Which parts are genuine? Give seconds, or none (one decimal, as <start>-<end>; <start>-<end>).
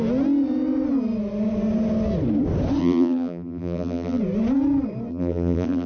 0.0-2.8; 4.2-5.1